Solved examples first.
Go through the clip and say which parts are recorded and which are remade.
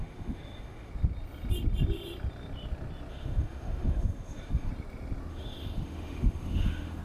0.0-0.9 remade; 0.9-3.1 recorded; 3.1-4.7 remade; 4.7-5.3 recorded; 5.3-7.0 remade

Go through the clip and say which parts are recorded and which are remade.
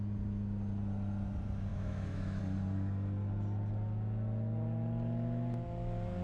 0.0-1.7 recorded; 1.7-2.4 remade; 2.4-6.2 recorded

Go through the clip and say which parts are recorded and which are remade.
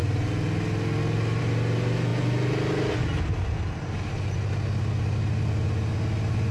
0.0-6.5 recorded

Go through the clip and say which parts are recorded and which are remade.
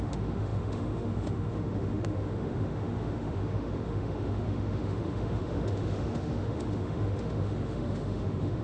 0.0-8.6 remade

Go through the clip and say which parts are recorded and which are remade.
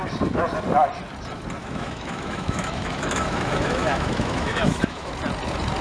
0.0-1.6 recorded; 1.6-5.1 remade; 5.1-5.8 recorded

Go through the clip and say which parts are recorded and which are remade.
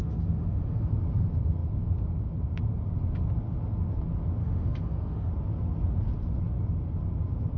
0.0-0.9 remade; 0.9-4.4 recorded; 4.4-5.3 remade; 5.3-7.6 recorded